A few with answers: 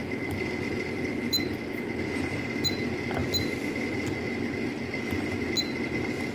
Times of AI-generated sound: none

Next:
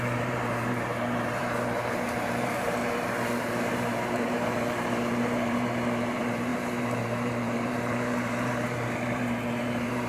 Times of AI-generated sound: 0.0-2.8; 3.4-10.1

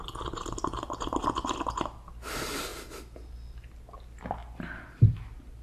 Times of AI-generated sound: none

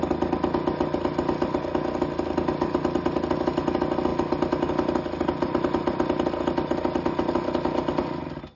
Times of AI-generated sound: none

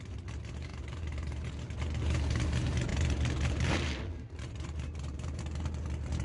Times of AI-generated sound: 0.7-1.5; 2.9-5.4

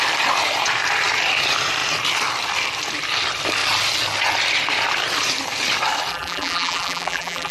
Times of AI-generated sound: 6.1-7.5

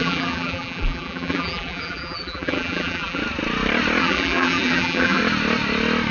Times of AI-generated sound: 0.0-3.2; 4.0-5.2